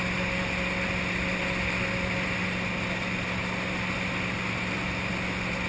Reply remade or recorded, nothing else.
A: recorded